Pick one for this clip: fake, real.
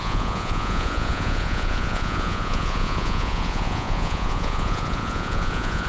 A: fake